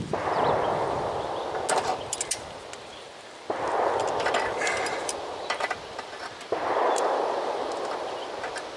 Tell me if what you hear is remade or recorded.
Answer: recorded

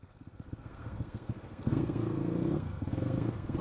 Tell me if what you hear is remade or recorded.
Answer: remade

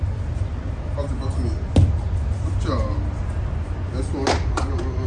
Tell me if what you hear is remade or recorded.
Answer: recorded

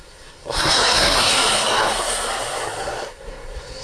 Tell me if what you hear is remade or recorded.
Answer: remade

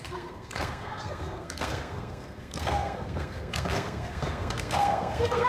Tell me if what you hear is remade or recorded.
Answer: remade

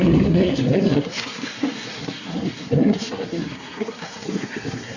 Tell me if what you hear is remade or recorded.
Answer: remade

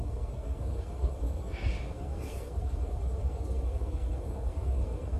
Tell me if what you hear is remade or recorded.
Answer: remade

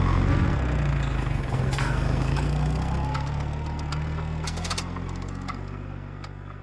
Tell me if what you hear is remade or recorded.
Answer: remade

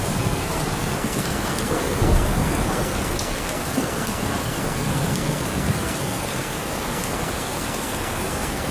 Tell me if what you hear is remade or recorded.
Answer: remade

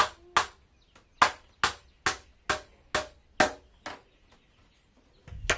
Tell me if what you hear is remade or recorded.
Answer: recorded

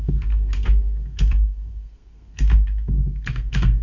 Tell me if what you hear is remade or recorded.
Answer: remade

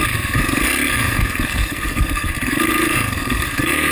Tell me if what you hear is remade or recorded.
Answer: remade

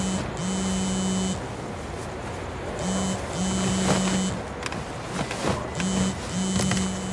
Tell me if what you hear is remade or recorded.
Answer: recorded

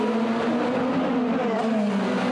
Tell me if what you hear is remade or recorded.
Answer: recorded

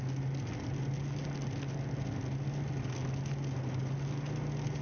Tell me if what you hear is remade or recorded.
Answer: recorded